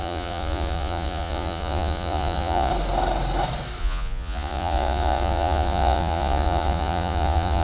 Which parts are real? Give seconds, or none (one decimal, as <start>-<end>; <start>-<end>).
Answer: 2.7-3.8